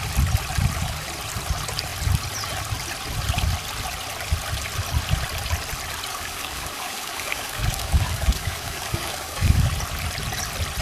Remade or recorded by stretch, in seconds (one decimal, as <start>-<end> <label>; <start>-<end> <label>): 0.0-6.1 recorded; 6.1-9.7 remade; 9.7-10.8 recorded